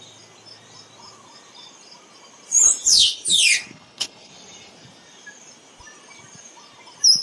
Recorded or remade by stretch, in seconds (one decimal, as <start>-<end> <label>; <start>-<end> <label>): 0.0-2.9 recorded; 2.9-4.3 remade; 4.3-7.2 recorded